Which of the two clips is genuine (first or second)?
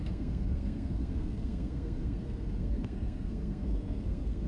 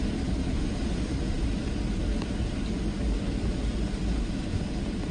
second